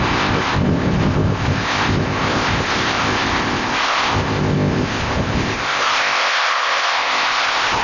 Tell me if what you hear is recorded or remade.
remade